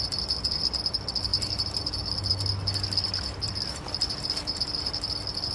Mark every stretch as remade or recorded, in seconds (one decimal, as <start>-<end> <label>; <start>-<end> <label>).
0.0-5.5 recorded